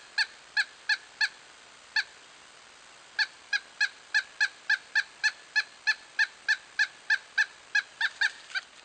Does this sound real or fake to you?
real